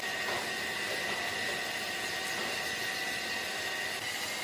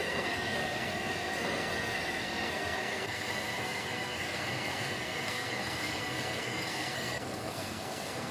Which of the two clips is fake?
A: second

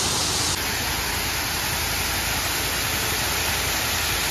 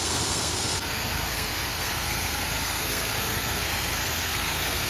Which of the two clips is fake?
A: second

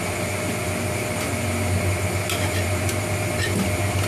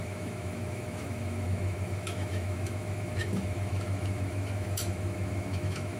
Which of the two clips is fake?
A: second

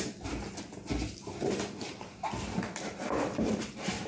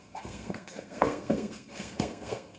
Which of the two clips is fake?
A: second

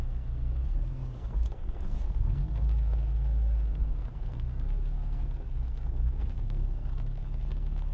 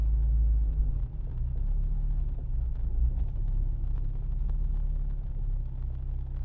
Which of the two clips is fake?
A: first